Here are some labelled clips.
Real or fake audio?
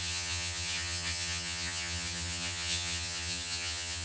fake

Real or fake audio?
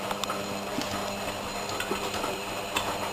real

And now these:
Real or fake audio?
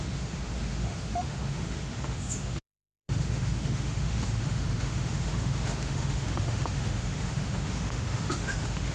fake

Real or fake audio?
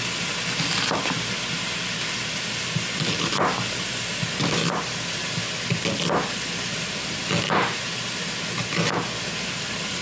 real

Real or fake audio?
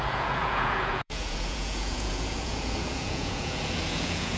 fake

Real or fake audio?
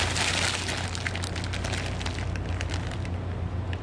real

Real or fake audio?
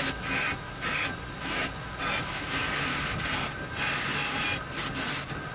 real